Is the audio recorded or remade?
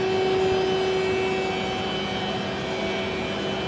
recorded